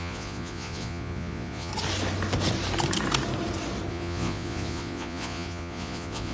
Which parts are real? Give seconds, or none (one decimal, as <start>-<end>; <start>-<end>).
1.7-3.9